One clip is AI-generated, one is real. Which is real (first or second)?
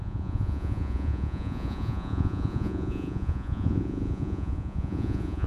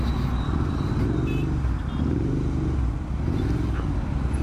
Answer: second